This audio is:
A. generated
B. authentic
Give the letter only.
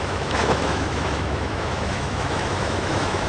A